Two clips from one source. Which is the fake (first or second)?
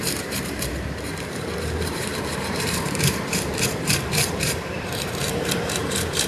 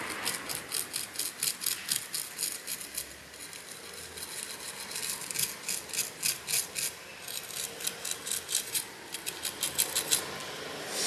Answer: first